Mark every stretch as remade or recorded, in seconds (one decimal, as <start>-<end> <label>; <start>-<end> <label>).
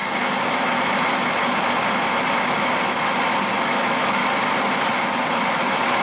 0.0-3.6 recorded; 3.6-4.2 remade; 4.2-6.0 recorded